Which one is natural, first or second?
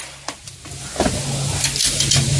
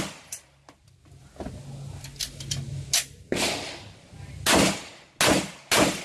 second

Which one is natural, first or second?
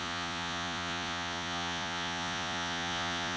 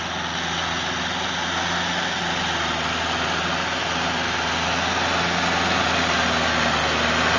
second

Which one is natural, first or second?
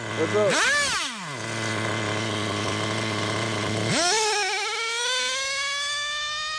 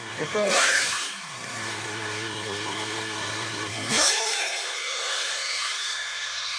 first